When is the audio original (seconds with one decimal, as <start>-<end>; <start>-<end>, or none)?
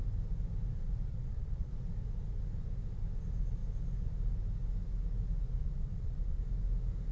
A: 0.0-1.1; 1.7-5.6; 6.4-7.1